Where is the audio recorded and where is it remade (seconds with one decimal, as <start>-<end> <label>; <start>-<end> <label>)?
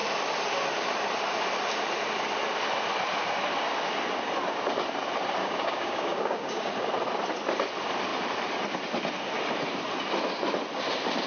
0.0-5.4 recorded; 5.4-6.7 remade; 6.7-11.3 recorded